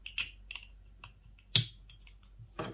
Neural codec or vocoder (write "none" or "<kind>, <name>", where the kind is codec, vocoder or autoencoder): none